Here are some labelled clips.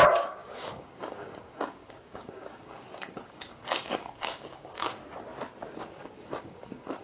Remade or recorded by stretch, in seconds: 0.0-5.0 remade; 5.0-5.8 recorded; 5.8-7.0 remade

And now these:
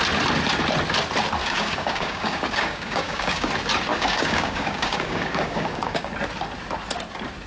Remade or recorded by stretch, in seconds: 0.0-1.4 recorded; 1.4-3.5 remade; 3.5-3.9 recorded; 3.9-6.1 remade; 6.1-7.5 recorded

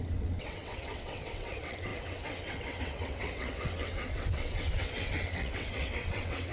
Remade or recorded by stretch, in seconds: 0.0-6.5 remade

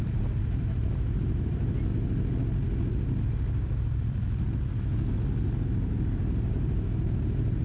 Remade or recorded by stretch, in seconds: 0.0-1.9 remade; 1.9-6.5 recorded; 6.5-7.6 remade

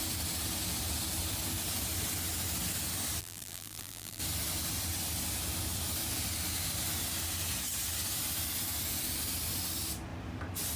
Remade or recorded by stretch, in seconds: 0.0-3.2 recorded; 3.2-4.2 remade; 4.2-10.8 recorded

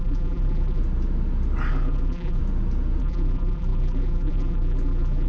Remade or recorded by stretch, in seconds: 0.0-0.8 remade; 0.8-1.7 recorded; 1.7-2.4 remade; 2.4-3.0 recorded; 3.0-5.3 remade